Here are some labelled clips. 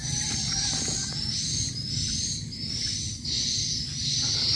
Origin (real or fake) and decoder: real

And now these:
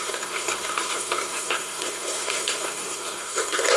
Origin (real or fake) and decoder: fake, codec, SNAC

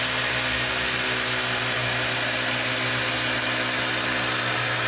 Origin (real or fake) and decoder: real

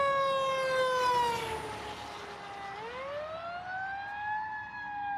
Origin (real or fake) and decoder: real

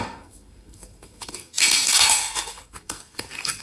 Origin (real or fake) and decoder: fake, codec, SNAC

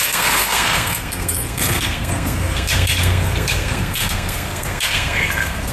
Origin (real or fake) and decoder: fake, codec, SNAC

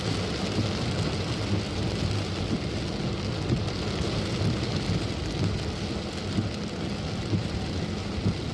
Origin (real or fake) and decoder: real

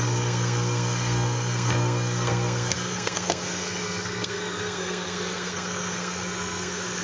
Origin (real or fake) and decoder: fake, codec, SNAC